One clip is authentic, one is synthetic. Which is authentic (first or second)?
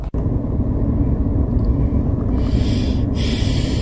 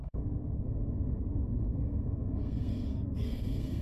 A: first